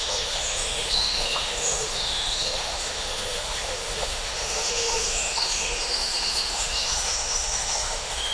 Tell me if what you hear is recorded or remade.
remade